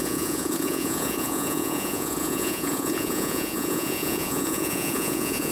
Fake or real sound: fake